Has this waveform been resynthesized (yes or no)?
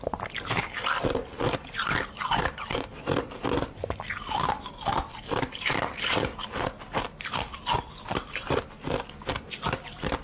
no